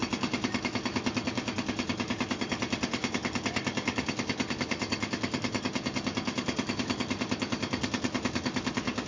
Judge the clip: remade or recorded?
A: remade